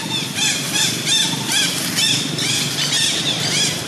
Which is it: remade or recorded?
recorded